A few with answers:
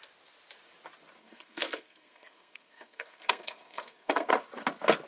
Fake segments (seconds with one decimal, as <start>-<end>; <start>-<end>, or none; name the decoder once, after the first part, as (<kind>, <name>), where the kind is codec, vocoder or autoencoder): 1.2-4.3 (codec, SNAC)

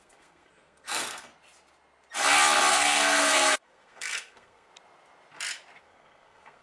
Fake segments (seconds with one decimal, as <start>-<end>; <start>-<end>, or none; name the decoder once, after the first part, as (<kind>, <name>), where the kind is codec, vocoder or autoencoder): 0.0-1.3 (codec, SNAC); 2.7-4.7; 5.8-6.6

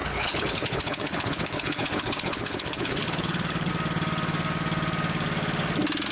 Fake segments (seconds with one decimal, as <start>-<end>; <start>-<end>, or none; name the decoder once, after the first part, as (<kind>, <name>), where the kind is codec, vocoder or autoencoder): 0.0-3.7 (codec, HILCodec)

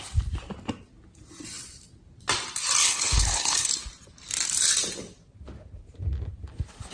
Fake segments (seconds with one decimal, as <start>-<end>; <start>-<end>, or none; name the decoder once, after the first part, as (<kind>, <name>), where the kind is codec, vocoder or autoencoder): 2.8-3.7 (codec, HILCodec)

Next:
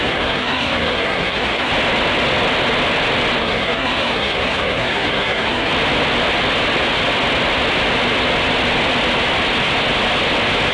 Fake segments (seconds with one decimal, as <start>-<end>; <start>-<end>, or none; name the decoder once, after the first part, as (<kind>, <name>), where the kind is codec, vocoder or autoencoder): 0.0-1.7 (codec, SNAC); 3.4-5.7